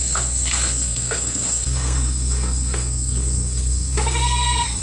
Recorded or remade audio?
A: remade